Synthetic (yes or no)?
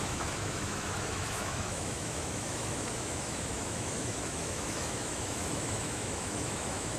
yes